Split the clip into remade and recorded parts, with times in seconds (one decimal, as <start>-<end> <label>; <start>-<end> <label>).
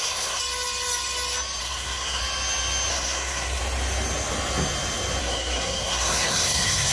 0.0-0.4 remade; 0.4-1.6 recorded; 1.6-2.2 remade; 2.2-2.9 recorded; 2.9-3.6 remade; 3.6-5.2 recorded; 5.2-6.9 remade